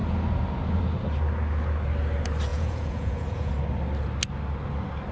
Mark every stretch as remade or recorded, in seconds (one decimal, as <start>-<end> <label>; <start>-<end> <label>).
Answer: 0.0-2.5 recorded; 2.5-3.5 remade; 3.5-5.1 recorded